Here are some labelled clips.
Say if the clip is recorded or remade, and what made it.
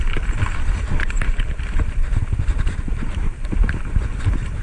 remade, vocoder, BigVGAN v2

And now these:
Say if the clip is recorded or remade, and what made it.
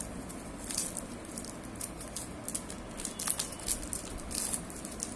recorded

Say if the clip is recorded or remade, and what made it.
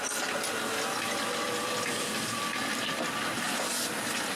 recorded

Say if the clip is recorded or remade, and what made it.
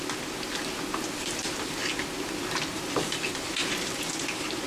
recorded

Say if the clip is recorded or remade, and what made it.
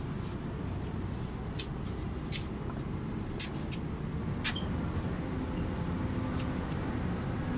recorded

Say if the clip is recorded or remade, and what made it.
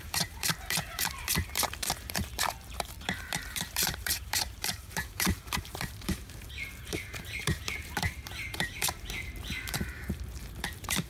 remade, vocoder, BigVGAN v2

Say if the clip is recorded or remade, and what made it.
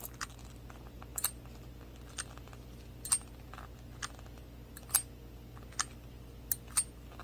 recorded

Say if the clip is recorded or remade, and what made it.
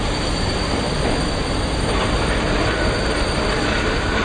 recorded